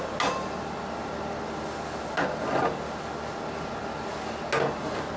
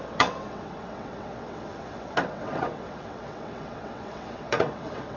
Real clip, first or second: first